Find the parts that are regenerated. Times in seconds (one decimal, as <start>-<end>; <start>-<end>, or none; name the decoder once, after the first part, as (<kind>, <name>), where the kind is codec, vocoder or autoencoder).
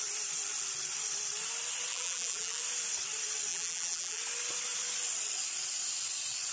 1.9-2.6 (vocoder, BigVGAN v2); 3.5-4.2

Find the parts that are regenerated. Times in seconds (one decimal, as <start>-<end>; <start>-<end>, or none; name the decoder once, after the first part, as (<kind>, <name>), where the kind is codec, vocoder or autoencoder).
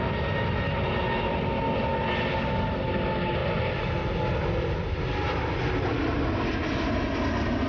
none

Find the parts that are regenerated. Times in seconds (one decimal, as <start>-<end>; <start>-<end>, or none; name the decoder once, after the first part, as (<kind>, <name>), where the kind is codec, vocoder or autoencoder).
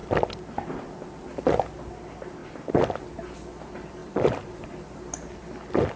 2.4-3.1 (vocoder, BigVGAN v2); 4.0-5.4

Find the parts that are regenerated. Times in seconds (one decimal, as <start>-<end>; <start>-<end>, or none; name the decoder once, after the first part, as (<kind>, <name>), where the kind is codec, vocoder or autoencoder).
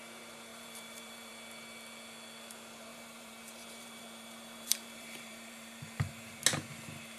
0.5-1.3 (vocoder, BigVGAN v2); 2.9-6.4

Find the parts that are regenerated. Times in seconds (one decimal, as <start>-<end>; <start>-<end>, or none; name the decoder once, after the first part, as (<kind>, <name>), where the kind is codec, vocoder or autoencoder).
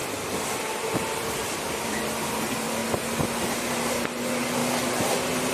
0.0-2.4 (vocoder, BigVGAN v2)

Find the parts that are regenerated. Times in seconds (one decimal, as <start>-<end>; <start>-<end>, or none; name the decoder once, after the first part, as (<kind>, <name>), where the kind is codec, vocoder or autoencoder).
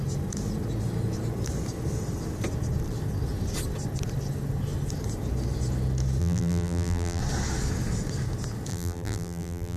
6.2-7.2 (vocoder, BigVGAN v2); 8.7-9.8